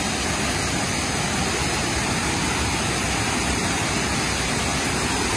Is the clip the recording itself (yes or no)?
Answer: yes